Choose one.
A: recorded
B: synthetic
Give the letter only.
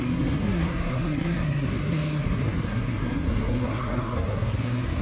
B